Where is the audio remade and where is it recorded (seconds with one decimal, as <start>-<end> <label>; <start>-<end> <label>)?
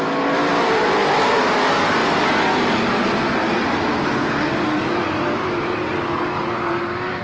0.0-7.2 recorded